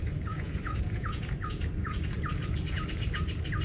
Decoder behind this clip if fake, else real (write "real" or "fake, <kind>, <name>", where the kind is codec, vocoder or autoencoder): fake, vocoder, Vocos